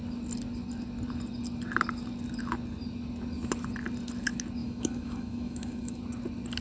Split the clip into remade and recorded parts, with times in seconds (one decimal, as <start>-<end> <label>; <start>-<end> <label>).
0.0-4.6 recorded; 4.6-6.0 remade; 6.0-6.6 recorded